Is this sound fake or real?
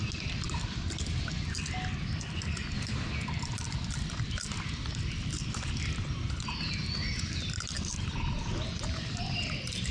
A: real